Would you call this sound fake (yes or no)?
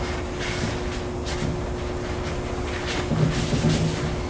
no